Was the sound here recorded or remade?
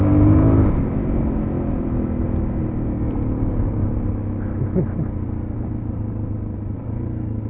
recorded